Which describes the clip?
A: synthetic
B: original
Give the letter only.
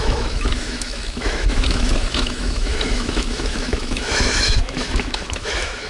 A